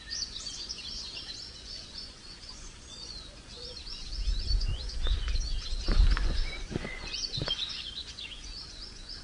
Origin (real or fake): fake